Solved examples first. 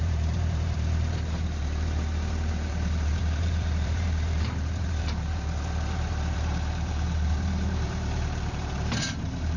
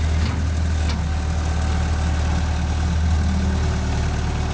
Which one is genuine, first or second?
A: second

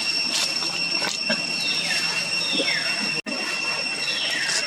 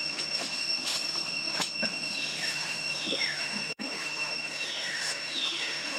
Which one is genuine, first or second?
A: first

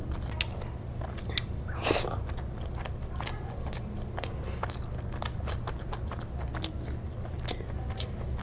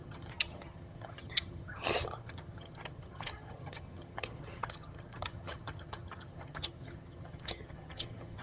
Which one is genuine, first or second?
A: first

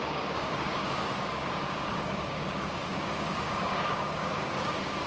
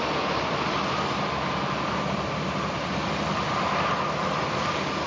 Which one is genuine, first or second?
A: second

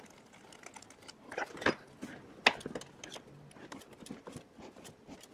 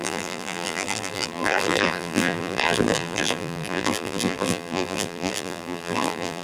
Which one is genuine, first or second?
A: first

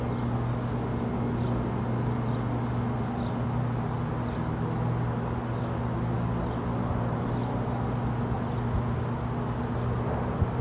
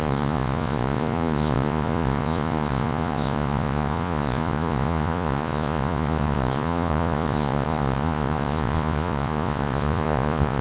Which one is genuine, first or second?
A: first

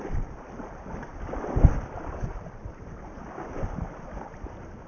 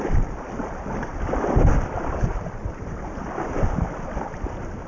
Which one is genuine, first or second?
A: first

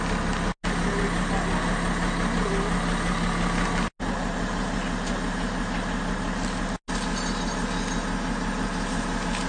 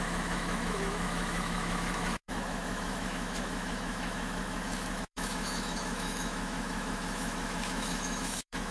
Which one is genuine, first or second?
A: first